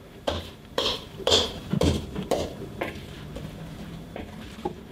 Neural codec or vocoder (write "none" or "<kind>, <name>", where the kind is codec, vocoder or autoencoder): vocoder, BigVGAN v2